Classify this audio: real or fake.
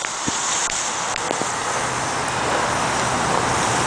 real